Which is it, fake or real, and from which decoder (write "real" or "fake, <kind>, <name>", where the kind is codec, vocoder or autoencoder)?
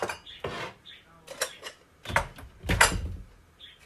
real